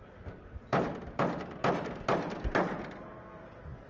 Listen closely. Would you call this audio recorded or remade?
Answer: recorded